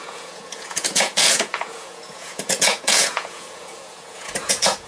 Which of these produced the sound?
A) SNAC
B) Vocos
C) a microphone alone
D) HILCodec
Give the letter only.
B